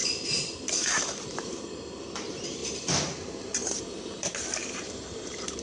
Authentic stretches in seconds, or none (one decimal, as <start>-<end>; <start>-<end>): 2.6-3.4